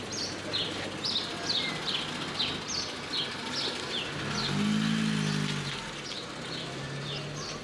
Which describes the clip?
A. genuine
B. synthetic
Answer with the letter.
A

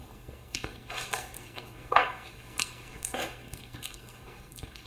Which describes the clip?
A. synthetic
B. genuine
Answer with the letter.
A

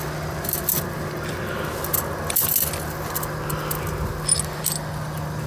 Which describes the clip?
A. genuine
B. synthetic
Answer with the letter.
A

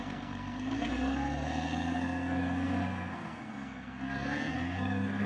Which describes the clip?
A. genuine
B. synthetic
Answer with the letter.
B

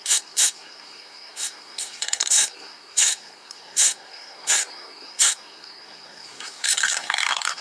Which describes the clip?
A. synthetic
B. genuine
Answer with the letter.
A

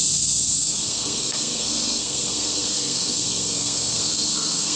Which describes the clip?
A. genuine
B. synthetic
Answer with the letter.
B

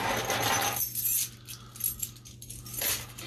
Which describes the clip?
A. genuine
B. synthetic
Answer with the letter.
A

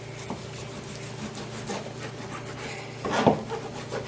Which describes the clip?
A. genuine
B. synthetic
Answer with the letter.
A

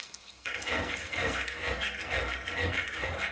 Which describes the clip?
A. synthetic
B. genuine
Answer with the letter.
A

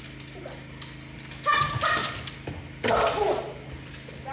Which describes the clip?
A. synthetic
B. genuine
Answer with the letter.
B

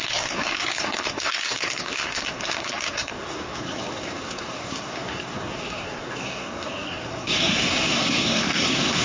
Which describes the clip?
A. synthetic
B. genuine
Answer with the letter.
A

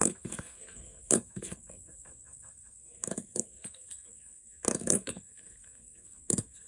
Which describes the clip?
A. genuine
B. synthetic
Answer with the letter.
B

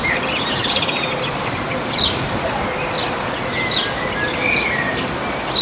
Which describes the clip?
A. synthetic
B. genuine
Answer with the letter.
B